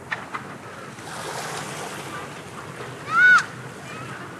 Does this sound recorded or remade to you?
recorded